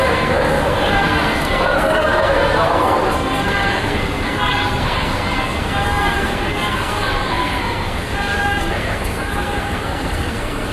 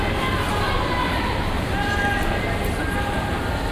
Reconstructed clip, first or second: first